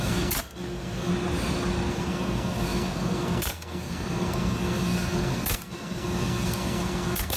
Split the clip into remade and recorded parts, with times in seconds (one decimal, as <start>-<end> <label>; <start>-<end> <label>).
0.0-1.1 remade; 1.1-1.9 recorded; 1.9-7.4 remade